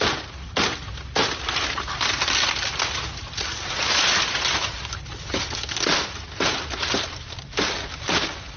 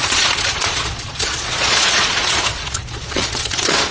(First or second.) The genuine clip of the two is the first